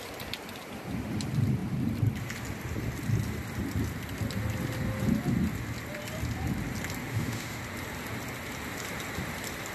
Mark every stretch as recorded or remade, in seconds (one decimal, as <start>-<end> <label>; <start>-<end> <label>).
0.0-7.1 recorded; 7.1-7.6 remade; 7.6-9.7 recorded